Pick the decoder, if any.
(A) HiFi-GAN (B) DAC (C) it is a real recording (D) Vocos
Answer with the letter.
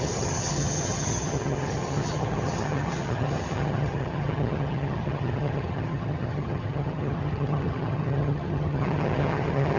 A